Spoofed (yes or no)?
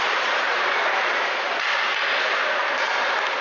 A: no